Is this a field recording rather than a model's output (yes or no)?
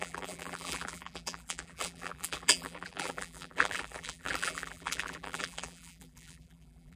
no